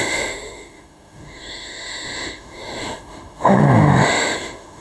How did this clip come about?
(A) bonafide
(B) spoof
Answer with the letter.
B